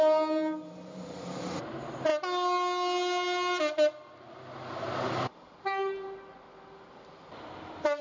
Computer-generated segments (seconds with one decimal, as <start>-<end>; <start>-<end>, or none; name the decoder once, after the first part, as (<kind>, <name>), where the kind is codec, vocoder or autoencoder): 0.0-2.1 (vocoder, BigVGAN v2); 6.9-8.0